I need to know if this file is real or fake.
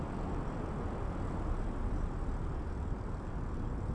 real